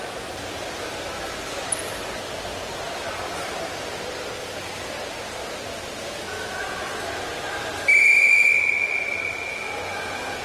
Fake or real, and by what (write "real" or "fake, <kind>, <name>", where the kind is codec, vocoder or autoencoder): real